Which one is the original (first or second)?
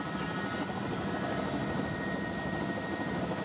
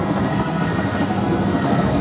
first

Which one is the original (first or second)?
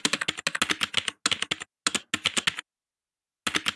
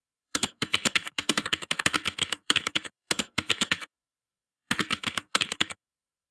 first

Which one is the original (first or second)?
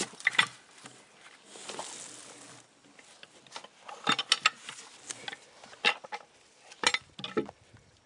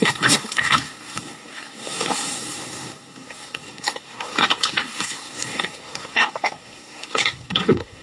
first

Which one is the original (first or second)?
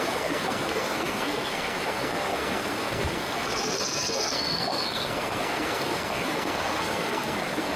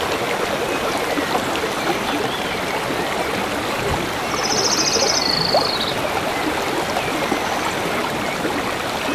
second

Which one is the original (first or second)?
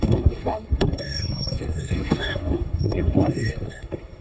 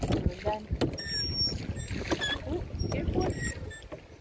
second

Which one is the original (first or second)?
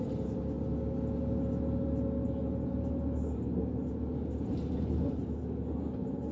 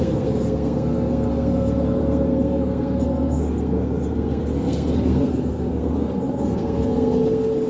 first